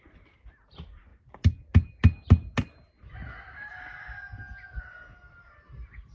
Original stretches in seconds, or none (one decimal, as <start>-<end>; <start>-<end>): 0.0-6.1